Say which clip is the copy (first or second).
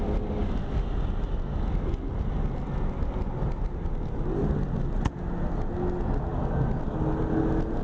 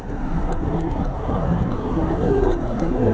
second